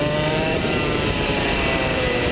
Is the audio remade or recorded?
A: remade